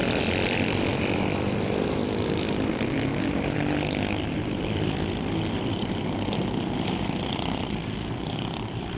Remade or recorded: remade